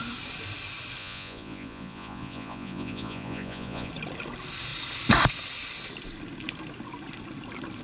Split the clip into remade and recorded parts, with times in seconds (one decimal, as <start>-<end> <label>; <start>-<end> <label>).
0.0-1.0 recorded; 1.0-3.9 remade; 3.9-7.8 recorded